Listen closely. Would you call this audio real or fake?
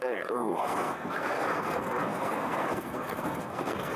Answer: fake